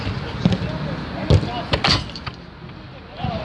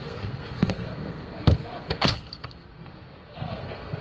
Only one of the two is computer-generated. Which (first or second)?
second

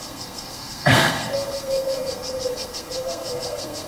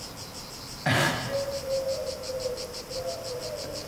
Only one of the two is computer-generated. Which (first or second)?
first